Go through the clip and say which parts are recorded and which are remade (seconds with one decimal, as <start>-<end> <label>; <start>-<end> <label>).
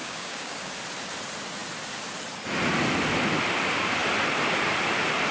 0.0-0.7 remade; 0.7-5.3 recorded